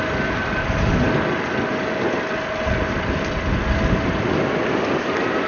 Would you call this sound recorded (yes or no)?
yes